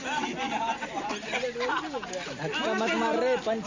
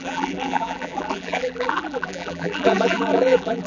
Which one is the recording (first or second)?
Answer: first